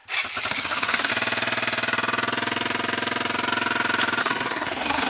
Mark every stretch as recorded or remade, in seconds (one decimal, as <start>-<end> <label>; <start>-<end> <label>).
0.0-0.5 recorded; 0.5-1.1 remade; 1.1-4.2 recorded; 4.2-5.1 remade